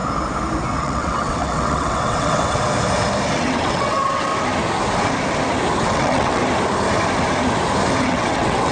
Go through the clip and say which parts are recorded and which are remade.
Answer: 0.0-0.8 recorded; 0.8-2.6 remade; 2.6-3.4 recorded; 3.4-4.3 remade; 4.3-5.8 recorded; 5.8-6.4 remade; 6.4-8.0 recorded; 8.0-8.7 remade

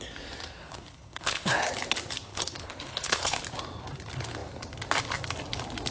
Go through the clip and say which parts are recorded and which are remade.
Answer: 0.0-0.6 recorded; 0.6-1.7 remade; 1.7-2.3 recorded; 2.3-3.4 remade; 3.4-5.9 recorded